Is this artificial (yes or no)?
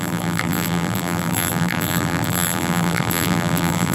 yes